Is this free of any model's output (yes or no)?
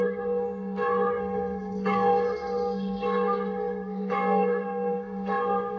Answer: no